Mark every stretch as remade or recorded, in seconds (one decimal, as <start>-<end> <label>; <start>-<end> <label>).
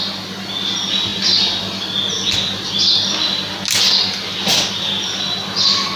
0.0-6.0 recorded